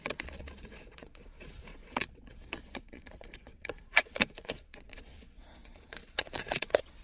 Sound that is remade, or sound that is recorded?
remade